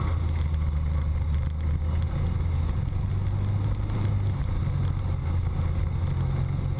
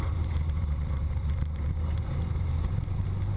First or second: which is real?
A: first